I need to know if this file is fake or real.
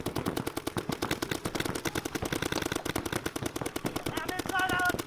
real